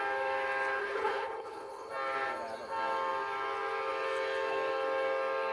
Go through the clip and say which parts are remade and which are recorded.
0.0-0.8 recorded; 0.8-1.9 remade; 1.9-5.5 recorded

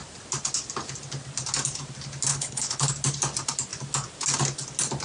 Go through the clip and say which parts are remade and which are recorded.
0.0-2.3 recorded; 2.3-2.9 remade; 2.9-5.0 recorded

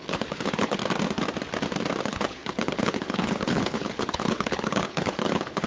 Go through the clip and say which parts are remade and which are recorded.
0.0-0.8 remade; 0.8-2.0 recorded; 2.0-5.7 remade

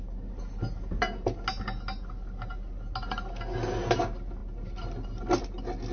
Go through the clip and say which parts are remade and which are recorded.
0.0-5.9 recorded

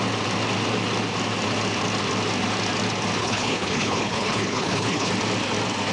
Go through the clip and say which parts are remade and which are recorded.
0.0-3.2 recorded; 3.2-5.1 remade; 5.1-5.9 recorded

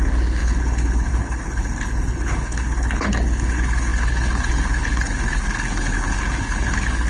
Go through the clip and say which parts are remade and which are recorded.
0.0-7.1 remade